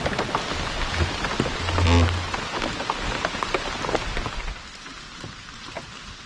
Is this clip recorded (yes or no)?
yes